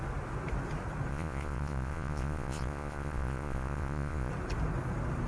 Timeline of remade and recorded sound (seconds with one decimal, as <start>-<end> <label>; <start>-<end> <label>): 0.0-1.1 recorded; 1.1-4.3 remade; 4.3-5.3 recorded